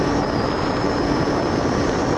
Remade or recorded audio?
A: remade